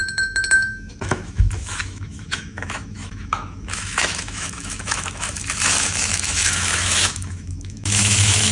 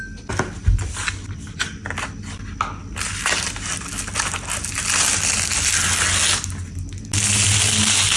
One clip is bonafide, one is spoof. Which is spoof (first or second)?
first